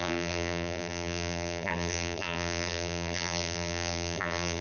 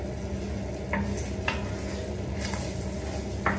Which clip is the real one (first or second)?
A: second